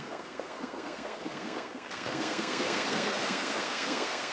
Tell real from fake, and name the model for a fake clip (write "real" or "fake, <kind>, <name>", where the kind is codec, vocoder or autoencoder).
fake, codec, SNAC